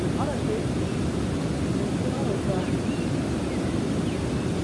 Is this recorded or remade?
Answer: recorded